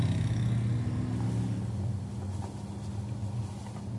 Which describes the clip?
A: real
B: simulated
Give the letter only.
A